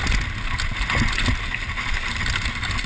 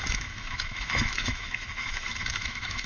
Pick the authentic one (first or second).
first